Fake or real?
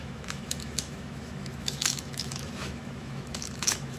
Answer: fake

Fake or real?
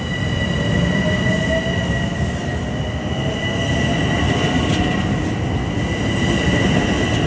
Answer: real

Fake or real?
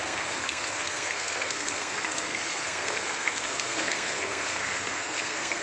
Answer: fake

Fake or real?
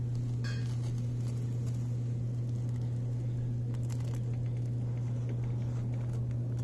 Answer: real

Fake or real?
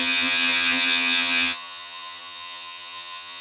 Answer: fake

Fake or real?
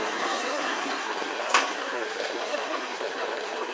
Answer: fake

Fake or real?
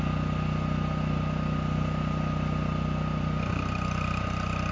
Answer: real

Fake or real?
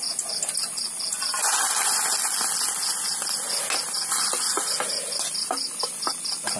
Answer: real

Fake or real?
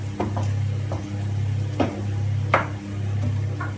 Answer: real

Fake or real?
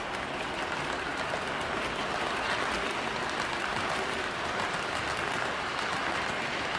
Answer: real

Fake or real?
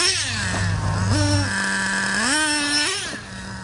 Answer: real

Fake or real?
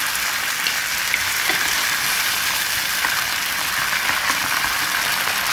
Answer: real